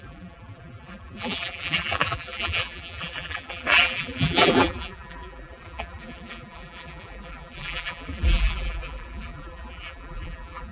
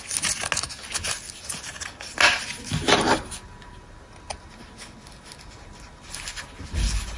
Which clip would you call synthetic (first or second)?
first